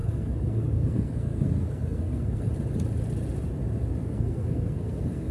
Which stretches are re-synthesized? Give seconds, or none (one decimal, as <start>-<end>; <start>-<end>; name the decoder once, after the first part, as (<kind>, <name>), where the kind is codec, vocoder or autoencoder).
0.0-2.5 (codec, SNAC); 4.0-5.3